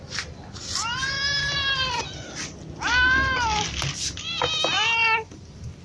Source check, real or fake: real